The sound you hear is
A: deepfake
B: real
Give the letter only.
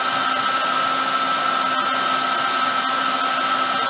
B